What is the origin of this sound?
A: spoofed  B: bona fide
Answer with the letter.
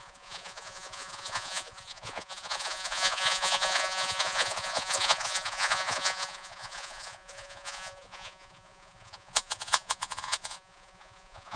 A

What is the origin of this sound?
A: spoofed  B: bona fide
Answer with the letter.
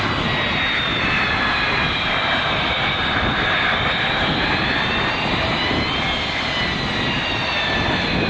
B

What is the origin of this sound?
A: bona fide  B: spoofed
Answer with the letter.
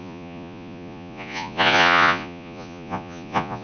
B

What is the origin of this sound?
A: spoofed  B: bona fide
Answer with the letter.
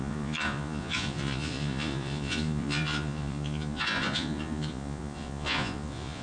A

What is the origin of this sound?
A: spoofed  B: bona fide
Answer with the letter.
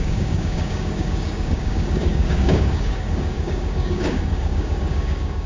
A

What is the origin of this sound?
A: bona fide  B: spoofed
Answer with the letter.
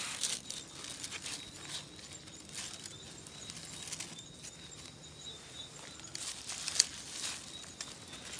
A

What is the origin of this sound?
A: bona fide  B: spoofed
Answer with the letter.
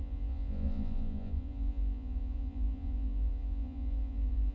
B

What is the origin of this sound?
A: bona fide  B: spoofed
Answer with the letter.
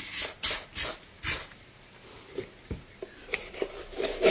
A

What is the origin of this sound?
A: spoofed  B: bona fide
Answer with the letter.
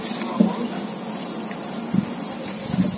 B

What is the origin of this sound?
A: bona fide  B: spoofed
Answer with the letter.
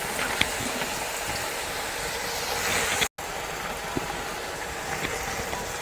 A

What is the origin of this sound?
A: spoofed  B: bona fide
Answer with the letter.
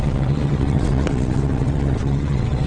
A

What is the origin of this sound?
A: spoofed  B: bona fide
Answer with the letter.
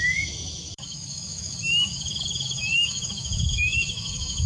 A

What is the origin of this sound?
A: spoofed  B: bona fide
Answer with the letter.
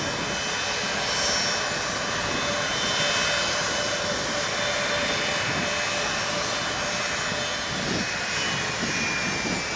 B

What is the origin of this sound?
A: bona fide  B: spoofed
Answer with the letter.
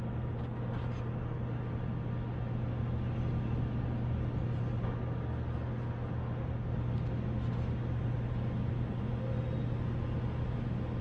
A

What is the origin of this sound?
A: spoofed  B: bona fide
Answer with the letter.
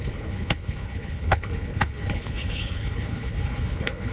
A